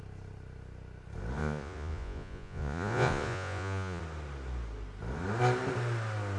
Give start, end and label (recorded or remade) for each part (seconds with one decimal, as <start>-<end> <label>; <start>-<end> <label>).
0.0-1.4 recorded; 1.4-4.0 remade; 4.0-6.4 recorded